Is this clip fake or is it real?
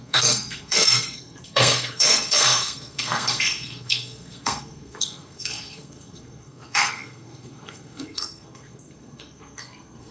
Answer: fake